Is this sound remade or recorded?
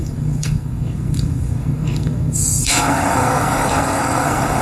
remade